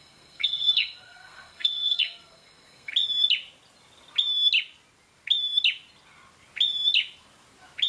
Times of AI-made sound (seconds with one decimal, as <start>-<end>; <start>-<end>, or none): 0.0-2.9